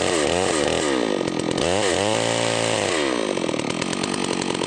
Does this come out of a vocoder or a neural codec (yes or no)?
no